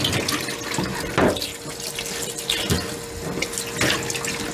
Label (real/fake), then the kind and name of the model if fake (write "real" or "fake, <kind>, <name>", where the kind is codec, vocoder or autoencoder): real